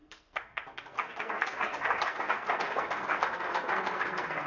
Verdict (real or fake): fake